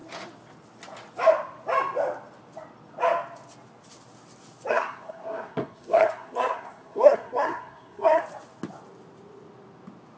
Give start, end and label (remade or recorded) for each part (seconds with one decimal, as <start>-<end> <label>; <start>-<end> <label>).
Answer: 0.0-4.7 recorded; 4.7-8.2 remade; 8.2-10.2 recorded